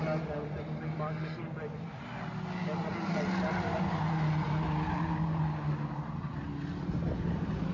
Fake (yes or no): no